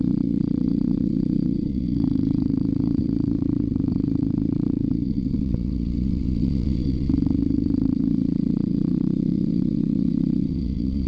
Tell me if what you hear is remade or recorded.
remade